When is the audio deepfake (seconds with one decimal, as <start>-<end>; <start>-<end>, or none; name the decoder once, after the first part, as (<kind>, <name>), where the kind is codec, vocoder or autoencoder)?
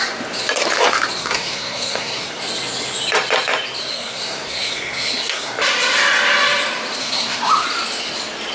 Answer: 1.2-2.4 (codec, SNAC); 3.9-5.6; 7.0-7.5